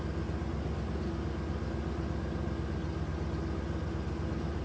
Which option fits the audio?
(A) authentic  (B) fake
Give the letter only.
A